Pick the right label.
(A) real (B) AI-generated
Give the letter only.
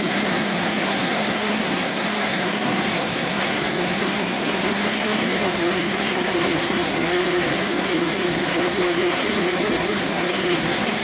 B